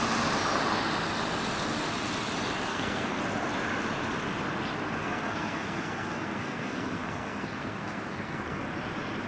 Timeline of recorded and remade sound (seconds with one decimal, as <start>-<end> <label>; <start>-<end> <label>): 0.0-2.7 recorded; 2.7-3.2 remade; 3.2-5.0 recorded; 5.0-8.6 remade; 8.6-9.3 recorded